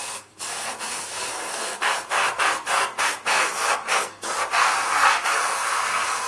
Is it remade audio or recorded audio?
remade